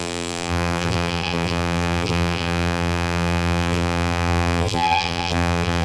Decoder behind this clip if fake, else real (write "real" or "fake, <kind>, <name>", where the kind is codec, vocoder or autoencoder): fake, vocoder, BigVGAN v2